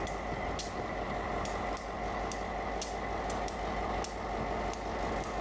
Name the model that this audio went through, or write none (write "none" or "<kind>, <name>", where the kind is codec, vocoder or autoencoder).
none